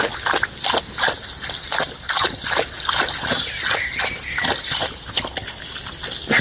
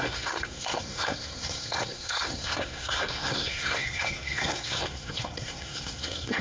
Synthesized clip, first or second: second